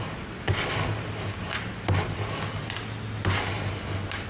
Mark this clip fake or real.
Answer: real